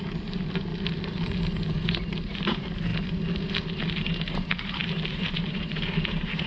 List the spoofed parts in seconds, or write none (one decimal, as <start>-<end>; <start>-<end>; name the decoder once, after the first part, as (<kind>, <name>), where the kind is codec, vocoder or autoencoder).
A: 0.0-0.7 (vocoder, BigVGAN v2); 2.3-2.9; 4.3-6.5